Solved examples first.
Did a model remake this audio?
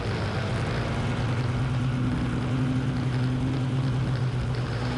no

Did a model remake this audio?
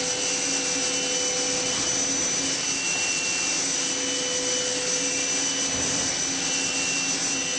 no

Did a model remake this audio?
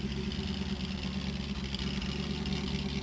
no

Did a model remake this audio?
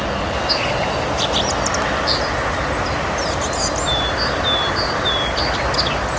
no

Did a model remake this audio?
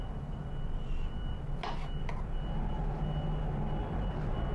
no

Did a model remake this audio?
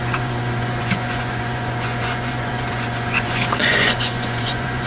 yes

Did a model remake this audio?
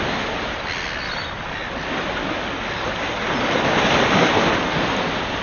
no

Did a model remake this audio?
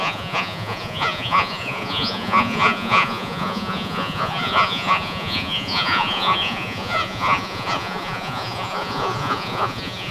yes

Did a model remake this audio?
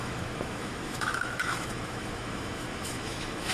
yes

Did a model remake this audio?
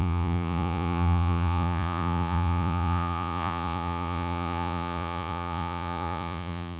yes